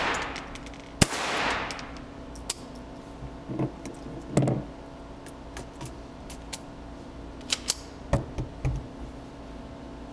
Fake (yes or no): no